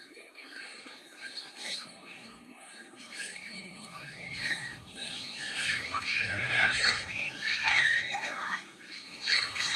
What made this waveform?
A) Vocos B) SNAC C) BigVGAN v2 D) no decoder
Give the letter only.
B